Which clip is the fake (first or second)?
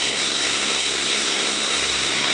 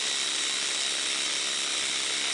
first